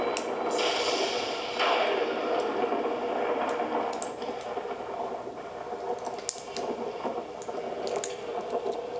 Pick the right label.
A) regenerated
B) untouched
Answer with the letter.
B